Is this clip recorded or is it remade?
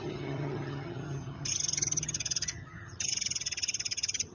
remade